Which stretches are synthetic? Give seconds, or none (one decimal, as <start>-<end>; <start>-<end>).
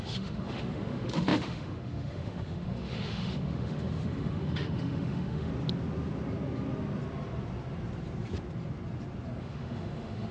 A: 0.0-5.5; 9.4-10.3